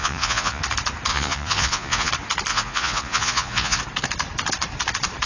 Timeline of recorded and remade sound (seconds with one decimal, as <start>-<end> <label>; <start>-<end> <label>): 0.0-0.6 remade; 0.6-1.1 recorded; 1.1-2.1 remade; 2.1-2.5 recorded; 2.5-3.8 remade; 3.8-5.3 recorded